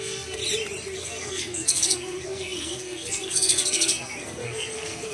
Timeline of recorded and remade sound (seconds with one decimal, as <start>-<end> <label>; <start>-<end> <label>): 0.0-0.4 remade; 0.4-1.0 recorded; 1.0-5.1 remade